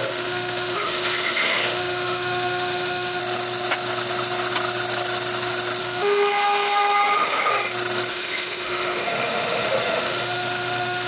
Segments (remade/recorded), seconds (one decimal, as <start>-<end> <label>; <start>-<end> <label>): 0.0-3.2 remade; 3.2-5.8 recorded; 5.8-7.5 remade; 7.5-8.1 recorded; 8.1-11.1 remade